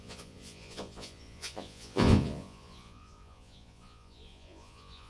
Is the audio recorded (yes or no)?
no